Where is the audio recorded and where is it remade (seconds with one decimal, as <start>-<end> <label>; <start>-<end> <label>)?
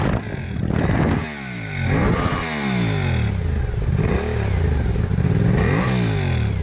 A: 0.0-6.6 recorded